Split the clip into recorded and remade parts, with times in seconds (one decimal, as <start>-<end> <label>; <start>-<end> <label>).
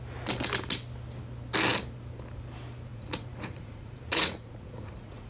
0.0-2.9 recorded; 2.9-5.3 remade